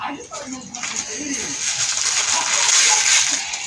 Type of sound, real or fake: real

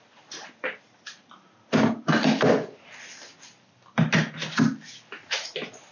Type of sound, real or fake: real